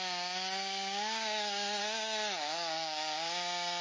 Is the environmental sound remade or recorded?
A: remade